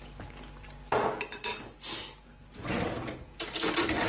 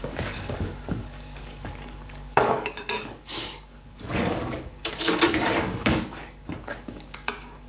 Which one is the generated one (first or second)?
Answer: second